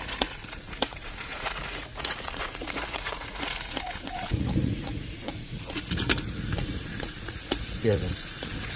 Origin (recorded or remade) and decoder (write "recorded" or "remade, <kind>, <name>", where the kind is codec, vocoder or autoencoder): remade, vocoder, Vocos